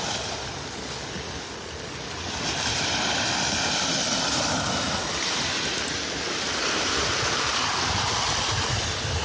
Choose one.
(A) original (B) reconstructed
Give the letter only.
A